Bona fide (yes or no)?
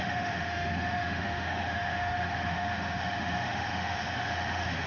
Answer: no